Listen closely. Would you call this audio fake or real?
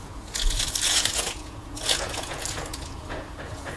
fake